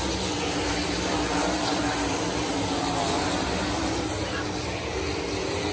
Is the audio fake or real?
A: real